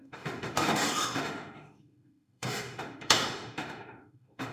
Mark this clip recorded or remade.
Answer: remade